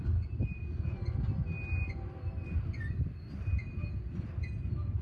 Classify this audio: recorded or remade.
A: recorded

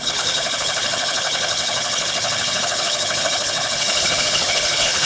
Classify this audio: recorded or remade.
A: remade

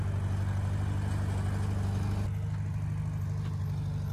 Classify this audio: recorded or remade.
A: recorded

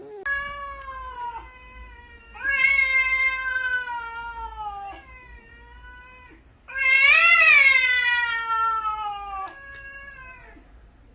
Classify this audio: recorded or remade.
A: recorded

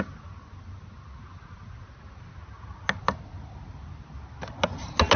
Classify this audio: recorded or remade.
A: recorded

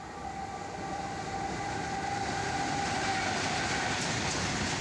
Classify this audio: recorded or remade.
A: recorded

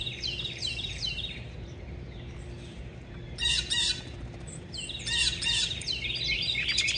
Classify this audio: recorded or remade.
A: remade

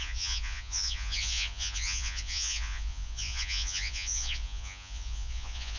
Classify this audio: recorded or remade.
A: remade